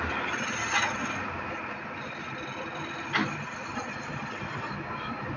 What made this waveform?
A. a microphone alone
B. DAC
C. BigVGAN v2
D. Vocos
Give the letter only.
A